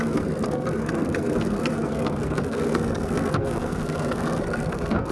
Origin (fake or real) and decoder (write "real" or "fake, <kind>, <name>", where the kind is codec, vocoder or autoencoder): fake, codec, SNAC